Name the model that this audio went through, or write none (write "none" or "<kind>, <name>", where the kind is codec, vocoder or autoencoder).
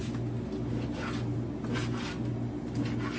none